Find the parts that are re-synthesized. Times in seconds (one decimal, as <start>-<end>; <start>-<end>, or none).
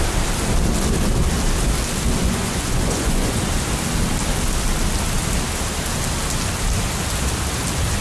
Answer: 2.2-3.5